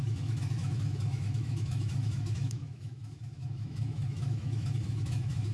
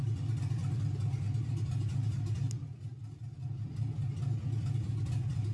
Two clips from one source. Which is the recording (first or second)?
second